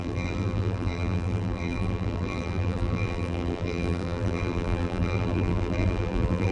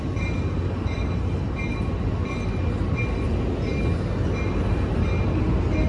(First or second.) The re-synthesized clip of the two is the first